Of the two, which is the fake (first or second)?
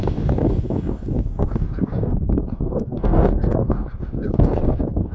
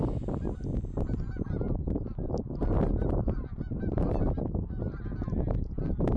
first